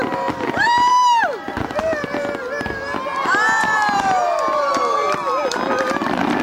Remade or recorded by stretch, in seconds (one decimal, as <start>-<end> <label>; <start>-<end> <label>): 0.0-6.4 recorded